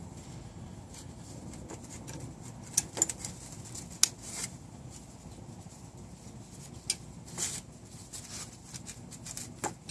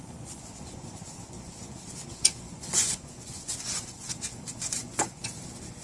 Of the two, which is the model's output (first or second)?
second